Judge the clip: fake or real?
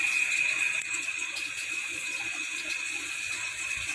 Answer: fake